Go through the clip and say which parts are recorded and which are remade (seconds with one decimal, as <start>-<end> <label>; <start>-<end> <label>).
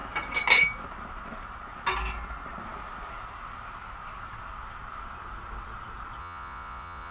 0.0-6.2 recorded; 6.2-7.1 remade